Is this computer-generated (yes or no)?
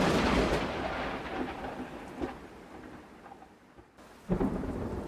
no